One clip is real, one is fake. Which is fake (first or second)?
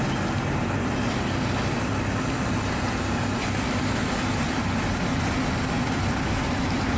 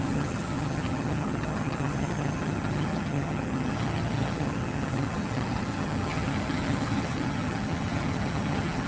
second